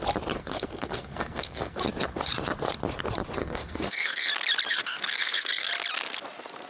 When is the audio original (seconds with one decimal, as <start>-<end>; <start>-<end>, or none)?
0.0-0.4; 1.8-3.4; 4.3-4.7; 5.7-6.7